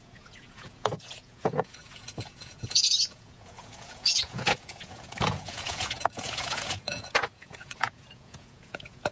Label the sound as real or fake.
fake